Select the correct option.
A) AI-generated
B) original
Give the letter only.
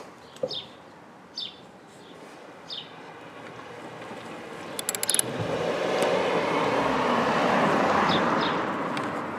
B